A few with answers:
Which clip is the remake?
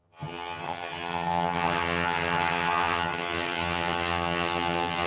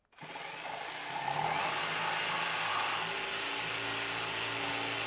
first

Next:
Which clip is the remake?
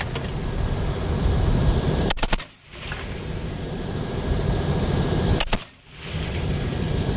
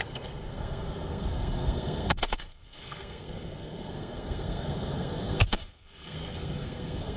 second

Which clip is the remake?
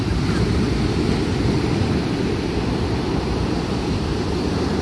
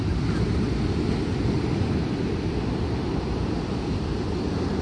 first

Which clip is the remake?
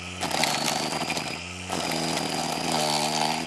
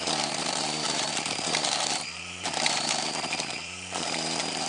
second